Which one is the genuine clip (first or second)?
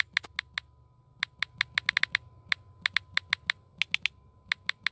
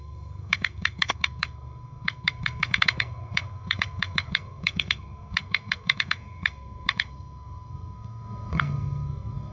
first